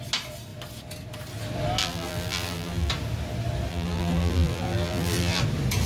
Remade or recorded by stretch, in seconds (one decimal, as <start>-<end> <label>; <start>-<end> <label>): 0.0-1.8 recorded; 1.8-2.9 remade; 2.9-3.7 recorded; 3.7-5.4 remade; 5.4-5.9 recorded